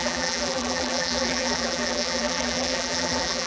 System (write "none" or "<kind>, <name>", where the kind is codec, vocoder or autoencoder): vocoder, BigVGAN v2